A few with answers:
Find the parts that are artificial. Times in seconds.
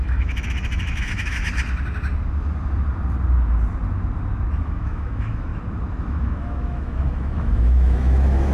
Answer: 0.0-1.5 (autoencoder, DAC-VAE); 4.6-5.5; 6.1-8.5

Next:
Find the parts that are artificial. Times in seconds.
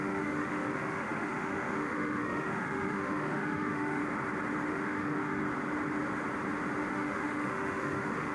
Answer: 0.0-4.0 (autoencoder, DAC-VAE); 4.7-5.4; 6.9-8.3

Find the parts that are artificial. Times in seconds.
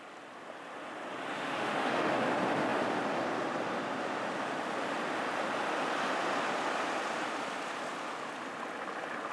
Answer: 1.3-2.1 (autoencoder, DAC-VAE)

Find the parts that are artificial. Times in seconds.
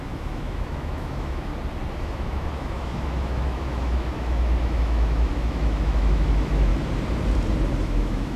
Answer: 0.0-1.5 (autoencoder, DAC-VAE); 2.0-6.7; 7.8-8.4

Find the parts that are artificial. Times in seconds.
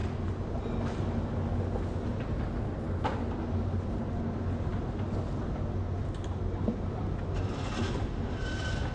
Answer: none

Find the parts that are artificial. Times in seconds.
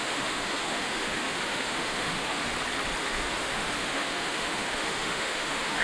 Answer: 0.0-2.5 (autoencoder, DAC-VAE); 3.0-5.8